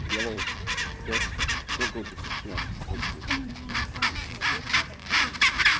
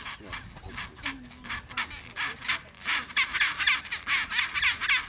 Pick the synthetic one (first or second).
first